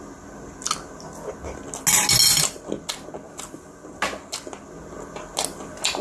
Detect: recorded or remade recorded